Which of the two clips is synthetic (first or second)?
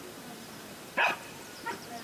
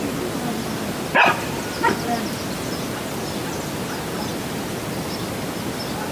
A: first